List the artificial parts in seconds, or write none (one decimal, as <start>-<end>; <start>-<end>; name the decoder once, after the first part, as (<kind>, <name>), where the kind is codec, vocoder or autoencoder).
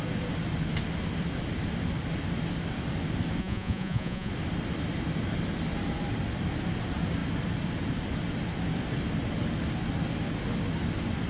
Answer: 3.4-4.3 (vocoder, Vocos)